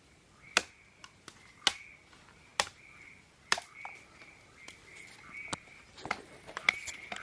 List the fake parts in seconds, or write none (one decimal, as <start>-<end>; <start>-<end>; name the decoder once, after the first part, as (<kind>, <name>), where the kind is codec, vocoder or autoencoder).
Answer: none